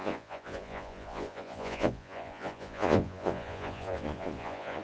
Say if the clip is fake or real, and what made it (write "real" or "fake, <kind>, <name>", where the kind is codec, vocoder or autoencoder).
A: fake, vocoder, Vocos